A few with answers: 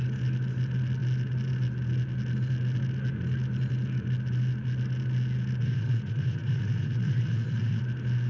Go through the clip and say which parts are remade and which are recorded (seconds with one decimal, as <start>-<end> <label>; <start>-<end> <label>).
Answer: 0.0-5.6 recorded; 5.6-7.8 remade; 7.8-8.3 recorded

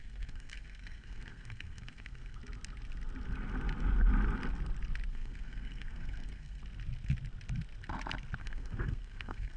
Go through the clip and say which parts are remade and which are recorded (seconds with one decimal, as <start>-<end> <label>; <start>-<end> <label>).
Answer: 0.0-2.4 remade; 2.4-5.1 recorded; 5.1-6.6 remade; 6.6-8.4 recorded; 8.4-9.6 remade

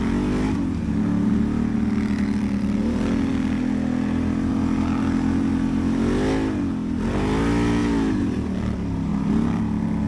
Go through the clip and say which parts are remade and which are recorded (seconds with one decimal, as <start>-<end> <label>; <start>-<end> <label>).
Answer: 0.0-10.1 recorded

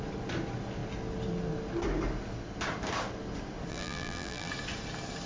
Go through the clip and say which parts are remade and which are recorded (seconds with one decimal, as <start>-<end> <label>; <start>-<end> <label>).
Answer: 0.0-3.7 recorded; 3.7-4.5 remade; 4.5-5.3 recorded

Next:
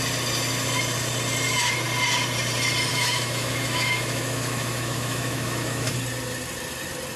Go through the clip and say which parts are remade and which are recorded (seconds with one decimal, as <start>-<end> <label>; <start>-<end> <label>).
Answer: 0.0-2.9 recorded; 2.9-5.9 remade; 5.9-7.2 recorded